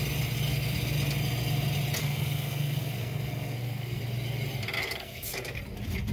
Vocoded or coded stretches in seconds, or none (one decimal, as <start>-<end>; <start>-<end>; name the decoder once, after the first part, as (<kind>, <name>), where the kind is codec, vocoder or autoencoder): 2.0-4.0 (codec, SNAC); 4.8-5.6